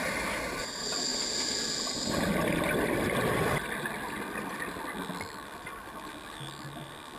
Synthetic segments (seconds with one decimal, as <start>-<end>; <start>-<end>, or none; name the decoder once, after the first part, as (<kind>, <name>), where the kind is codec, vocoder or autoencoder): none